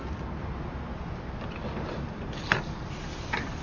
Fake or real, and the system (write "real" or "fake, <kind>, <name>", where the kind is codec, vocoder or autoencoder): real